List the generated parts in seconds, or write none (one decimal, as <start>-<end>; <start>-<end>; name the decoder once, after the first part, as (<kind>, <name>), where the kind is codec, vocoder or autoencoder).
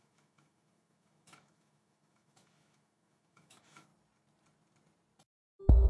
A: 0.0-3.9 (autoencoder, DAC-VAE)